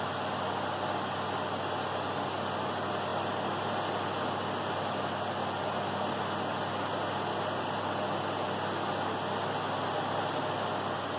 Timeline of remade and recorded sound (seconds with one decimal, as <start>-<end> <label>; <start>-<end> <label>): 0.0-11.2 recorded